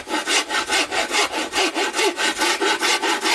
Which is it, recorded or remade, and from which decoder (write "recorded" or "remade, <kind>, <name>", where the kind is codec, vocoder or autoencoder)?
recorded